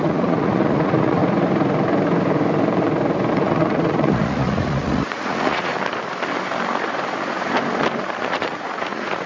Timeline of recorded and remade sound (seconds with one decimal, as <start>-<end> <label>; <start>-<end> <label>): 0.0-1.2 remade; 1.2-3.3 recorded; 3.3-5.7 remade; 5.7-8.2 recorded; 8.2-9.3 remade